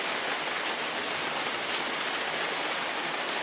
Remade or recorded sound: recorded